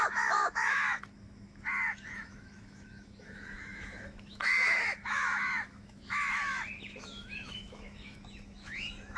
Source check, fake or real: fake